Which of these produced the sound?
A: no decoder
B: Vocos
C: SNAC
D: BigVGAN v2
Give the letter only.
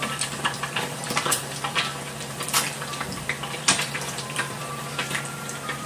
D